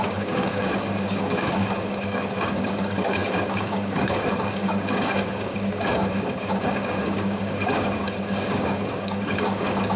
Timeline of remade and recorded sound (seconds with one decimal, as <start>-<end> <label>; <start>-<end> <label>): 0.0-10.0 remade

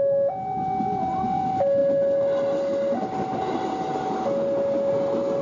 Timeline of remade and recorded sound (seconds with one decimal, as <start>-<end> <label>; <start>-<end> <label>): 0.0-5.4 recorded

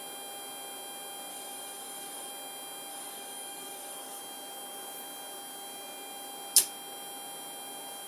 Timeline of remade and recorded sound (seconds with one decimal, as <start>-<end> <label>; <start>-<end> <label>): 0.0-1.3 recorded; 1.3-2.3 remade; 2.3-2.9 recorded; 2.9-4.2 remade; 4.2-8.1 recorded

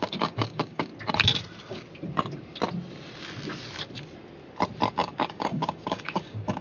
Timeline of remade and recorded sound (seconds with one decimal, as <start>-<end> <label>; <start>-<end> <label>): 0.0-0.9 remade; 0.9-4.9 recorded; 4.9-6.6 remade